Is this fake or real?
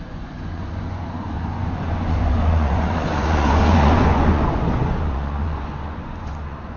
fake